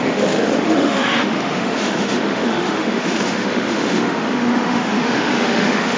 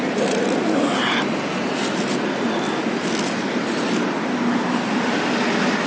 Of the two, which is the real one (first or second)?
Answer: second